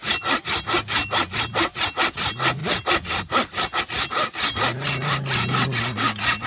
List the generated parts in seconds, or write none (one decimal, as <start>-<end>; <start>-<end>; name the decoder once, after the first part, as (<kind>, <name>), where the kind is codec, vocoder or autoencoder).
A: none